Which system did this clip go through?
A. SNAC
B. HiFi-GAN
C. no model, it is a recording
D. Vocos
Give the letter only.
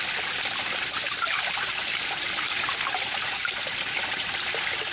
C